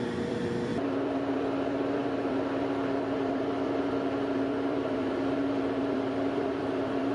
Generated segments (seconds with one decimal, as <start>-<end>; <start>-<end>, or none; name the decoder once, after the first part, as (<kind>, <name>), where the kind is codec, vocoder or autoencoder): 0.0-7.1 (vocoder, BigVGAN v2)